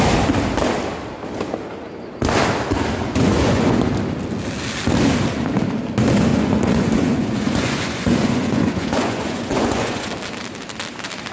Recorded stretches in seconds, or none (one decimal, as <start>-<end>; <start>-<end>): 0.0-3.0; 3.9-6.3; 10.1-11.3